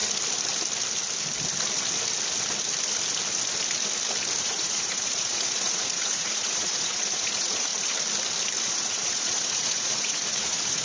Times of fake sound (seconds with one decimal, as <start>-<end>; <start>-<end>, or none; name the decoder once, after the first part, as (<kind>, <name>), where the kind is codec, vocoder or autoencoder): 4.4-7.7 (vocoder, Vocos); 8.6-10.8

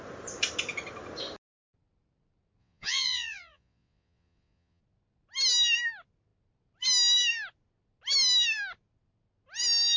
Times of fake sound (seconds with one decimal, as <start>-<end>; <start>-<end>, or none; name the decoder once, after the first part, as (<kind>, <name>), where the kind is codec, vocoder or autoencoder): 2.6-4.8 (vocoder, Vocos)